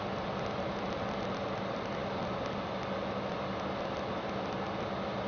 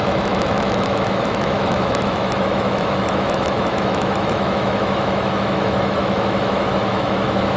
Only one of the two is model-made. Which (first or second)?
second